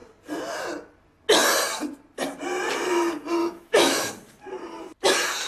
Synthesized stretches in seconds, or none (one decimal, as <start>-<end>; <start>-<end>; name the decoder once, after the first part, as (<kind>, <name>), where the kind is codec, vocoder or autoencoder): 3.4-4.1 (autoencoder, DAC-VAE)